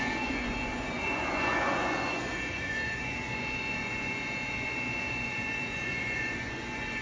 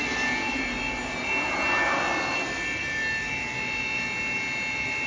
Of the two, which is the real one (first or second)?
second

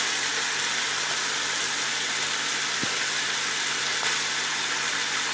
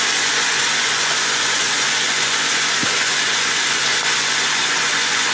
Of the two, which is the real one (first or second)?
first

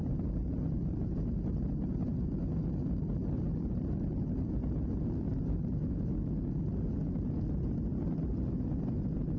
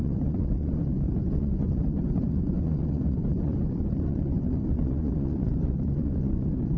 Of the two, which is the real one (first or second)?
first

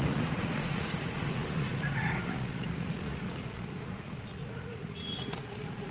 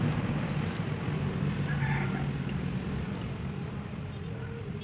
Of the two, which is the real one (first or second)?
second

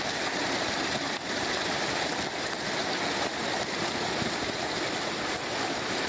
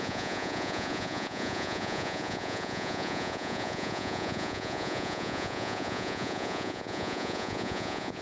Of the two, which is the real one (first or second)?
first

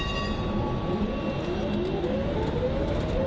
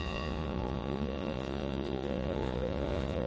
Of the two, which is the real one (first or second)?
first